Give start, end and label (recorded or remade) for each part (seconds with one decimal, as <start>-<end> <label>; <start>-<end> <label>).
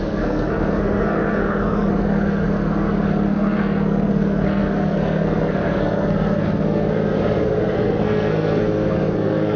0.0-9.6 remade